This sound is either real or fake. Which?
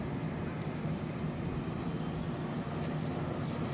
real